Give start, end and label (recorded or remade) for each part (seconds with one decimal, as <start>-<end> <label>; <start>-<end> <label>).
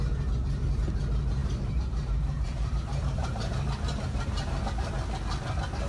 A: 0.0-1.4 recorded; 1.4-4.9 remade; 4.9-5.9 recorded